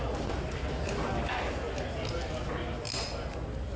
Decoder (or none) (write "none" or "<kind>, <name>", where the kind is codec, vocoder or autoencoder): none